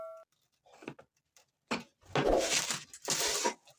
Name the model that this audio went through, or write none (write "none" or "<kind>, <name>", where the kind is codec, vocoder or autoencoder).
none